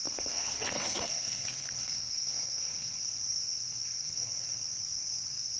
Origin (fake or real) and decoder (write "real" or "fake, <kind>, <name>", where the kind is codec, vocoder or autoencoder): fake, codec, SNAC